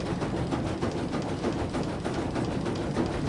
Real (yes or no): yes